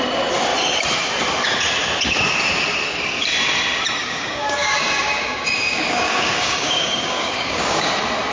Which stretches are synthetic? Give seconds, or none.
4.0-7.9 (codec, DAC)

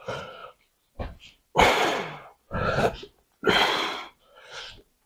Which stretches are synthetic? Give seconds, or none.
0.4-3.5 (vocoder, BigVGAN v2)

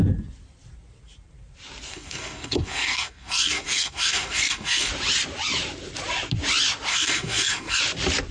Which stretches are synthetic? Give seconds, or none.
1.9-4.9 (codec, SNAC); 6.9-7.8

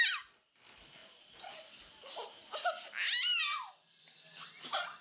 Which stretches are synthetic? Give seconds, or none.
none